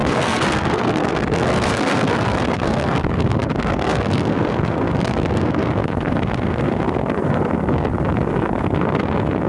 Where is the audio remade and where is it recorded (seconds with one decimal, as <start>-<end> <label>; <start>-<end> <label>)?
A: 0.0-9.5 remade